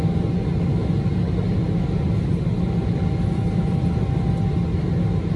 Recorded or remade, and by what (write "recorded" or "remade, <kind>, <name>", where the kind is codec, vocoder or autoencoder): recorded